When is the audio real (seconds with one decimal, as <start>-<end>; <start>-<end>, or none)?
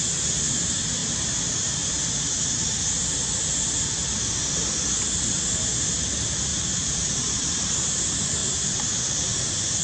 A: 0.0-6.5; 7.7-9.8